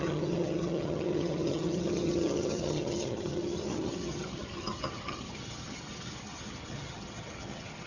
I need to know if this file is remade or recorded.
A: remade